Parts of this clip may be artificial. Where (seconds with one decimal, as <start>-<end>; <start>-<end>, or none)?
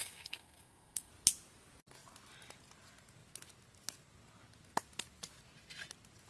0.0-1.1